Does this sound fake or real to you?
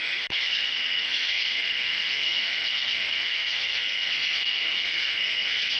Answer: fake